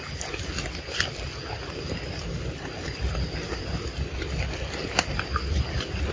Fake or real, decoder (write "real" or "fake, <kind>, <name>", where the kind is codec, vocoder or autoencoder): real